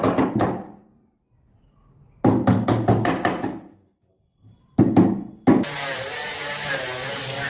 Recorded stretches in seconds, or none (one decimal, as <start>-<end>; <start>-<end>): 0.0-7.5